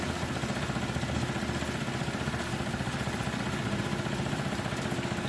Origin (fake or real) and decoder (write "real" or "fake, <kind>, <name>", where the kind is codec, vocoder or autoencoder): real